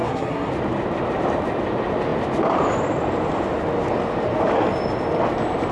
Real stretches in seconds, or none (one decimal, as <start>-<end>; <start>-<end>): 0.5-5.7

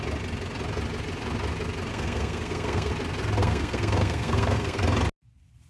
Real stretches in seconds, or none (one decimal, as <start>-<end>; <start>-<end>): 0.0-1.9; 2.9-3.4; 4.8-5.7

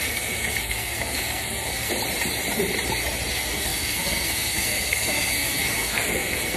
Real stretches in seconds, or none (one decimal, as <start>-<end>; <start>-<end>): 1.9-3.3

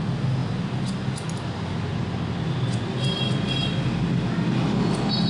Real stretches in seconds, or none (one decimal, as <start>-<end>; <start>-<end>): 0.0-5.3